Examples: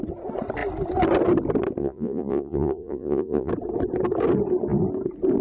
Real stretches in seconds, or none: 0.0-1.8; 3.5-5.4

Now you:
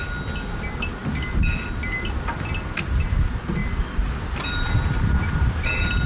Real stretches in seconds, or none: 0.0-6.1

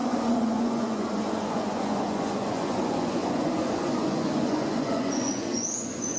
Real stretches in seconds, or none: none

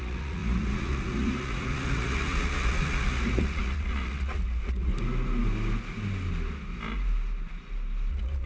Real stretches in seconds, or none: 4.9-8.1

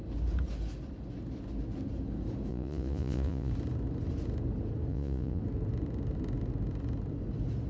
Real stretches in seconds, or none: 0.0-2.5; 3.5-4.9; 5.4-7.7

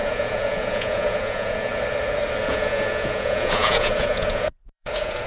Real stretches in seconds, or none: 1.7-2.5

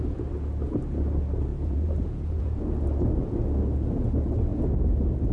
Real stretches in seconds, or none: 0.0-1.5; 2.6-5.3

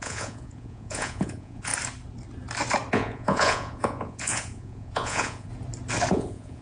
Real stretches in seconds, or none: 1.7-2.9; 5.5-6.1